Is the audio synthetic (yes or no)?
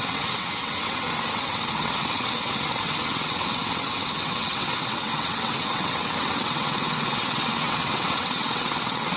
yes